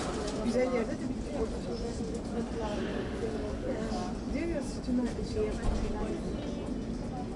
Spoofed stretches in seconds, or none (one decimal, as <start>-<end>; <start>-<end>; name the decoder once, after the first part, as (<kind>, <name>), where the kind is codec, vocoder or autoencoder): 2.9-3.9 (codec, DAC)